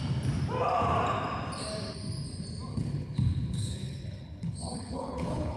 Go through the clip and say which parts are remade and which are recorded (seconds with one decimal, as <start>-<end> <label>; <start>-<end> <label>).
0.0-2.7 recorded; 2.7-5.6 remade